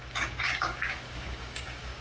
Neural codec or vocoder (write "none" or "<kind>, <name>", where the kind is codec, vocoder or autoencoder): codec, DAC